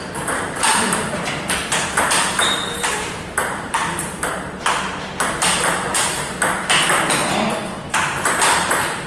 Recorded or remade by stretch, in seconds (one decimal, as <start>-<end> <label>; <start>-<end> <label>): 0.0-4.1 remade; 4.1-7.9 recorded; 7.9-9.1 remade